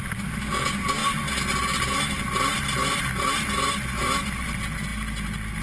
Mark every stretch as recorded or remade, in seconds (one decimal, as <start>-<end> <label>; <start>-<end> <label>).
0.0-5.6 recorded